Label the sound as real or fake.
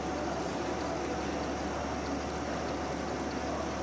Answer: real